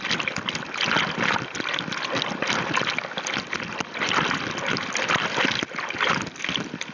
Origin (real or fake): real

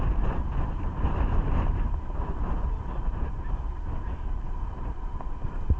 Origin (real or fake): fake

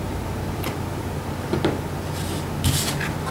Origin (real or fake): real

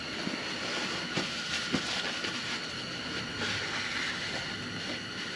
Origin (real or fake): real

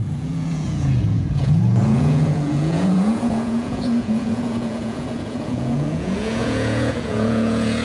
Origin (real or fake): fake